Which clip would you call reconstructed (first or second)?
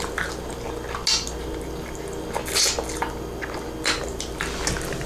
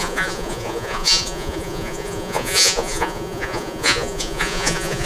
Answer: second